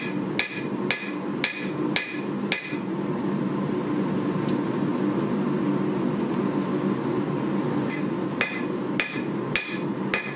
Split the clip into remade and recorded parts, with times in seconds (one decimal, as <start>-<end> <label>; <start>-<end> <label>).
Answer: 0.0-10.4 recorded